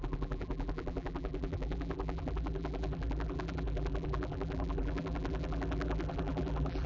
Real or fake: fake